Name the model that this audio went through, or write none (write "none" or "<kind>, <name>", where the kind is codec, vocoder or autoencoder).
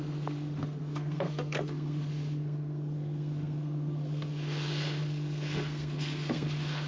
codec, SNAC